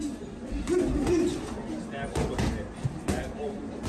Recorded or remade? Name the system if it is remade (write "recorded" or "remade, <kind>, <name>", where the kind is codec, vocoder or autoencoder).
recorded